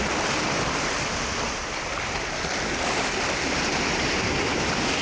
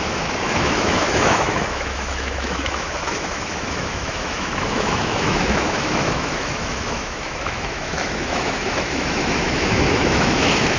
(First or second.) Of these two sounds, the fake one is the second